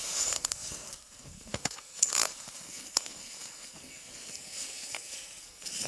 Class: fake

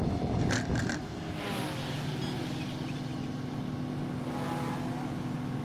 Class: real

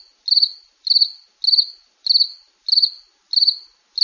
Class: real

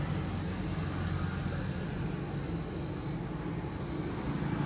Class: real